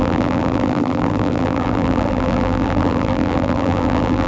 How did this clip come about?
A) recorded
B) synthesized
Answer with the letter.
B